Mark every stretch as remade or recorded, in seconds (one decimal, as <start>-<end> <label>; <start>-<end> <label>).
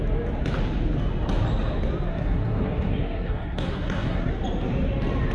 0.0-2.1 recorded; 2.1-4.3 remade; 4.3-5.3 recorded